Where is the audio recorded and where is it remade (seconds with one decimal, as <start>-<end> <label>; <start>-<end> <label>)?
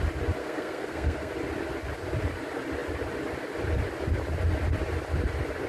0.0-0.4 recorded; 0.4-1.3 remade; 1.3-5.7 recorded